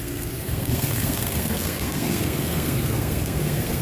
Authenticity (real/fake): fake